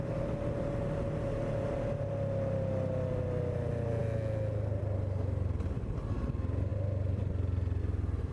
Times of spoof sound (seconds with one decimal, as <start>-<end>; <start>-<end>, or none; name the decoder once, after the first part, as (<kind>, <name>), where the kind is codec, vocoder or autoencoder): none

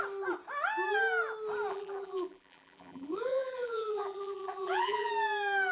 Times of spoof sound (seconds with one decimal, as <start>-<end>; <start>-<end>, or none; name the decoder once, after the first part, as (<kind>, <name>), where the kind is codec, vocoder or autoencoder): 1.7-5.1 (vocoder, BigVGAN v2)

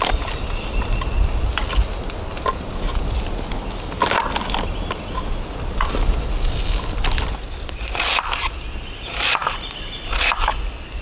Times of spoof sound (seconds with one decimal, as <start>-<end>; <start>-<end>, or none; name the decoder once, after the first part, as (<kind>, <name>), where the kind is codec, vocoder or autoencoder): none

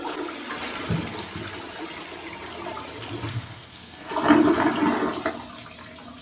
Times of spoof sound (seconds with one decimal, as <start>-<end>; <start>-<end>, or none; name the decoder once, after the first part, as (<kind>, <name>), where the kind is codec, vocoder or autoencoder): 3.3-4.1 (codec, SNAC)

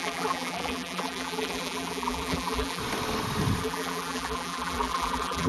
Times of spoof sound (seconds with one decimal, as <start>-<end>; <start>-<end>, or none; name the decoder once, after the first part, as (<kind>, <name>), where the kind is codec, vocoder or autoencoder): 0.0-2.8 (vocoder, BigVGAN v2); 3.6-5.5